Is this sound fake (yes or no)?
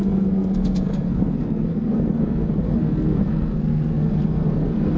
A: yes